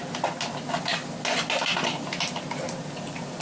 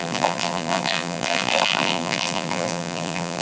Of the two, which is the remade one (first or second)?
second